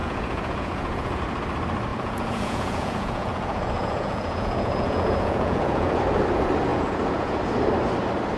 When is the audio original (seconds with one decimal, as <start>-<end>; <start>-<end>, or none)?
1.2-1.9; 6.0-6.7; 7.4-8.4